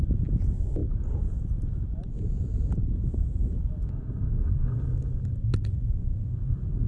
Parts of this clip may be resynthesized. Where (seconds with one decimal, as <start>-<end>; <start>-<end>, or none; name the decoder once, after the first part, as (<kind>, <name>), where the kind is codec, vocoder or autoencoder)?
2.5-4.6 (vocoder, Vocos); 6.0-6.9